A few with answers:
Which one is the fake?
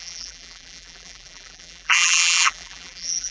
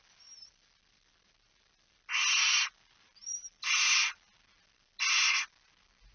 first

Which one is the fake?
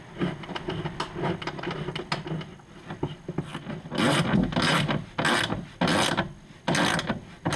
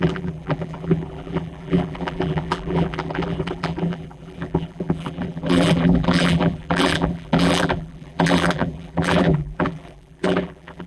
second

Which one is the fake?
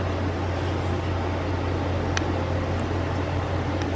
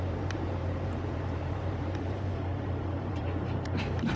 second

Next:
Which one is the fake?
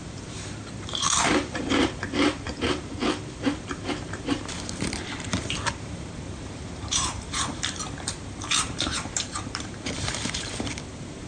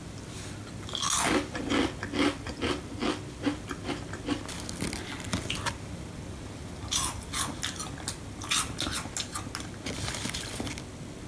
first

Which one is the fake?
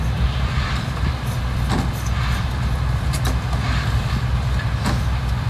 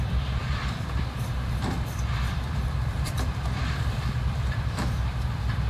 second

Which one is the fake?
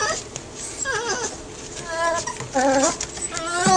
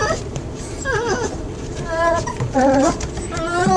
second